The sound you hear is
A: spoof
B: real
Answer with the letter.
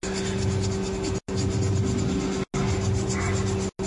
B